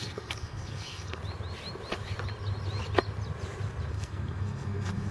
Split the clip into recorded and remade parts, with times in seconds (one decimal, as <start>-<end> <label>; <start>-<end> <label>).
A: 0.0-1.2 remade; 1.2-3.9 recorded; 3.9-5.1 remade